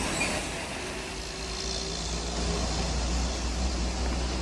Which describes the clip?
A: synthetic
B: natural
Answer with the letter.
B